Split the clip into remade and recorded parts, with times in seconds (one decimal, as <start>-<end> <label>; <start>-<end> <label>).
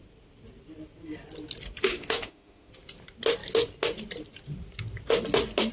0.0-1.9 recorded; 1.9-2.7 remade; 2.7-5.7 recorded